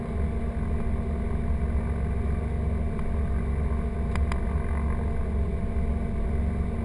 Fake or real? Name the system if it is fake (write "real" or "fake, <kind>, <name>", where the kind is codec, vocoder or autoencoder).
real